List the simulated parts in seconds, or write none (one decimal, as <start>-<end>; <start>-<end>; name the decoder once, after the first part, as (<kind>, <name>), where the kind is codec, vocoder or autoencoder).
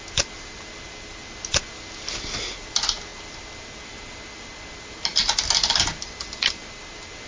none